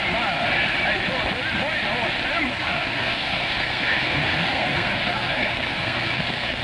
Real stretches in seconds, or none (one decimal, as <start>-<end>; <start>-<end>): 0.0-2.5